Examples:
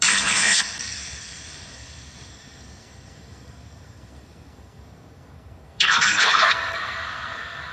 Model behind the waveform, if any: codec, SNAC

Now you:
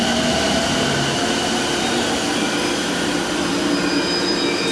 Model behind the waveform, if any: none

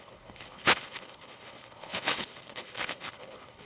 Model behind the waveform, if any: codec, HILCodec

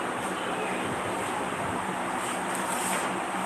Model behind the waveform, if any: none